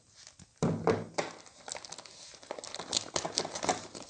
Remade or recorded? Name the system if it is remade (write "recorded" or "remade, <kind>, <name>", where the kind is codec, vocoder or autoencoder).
recorded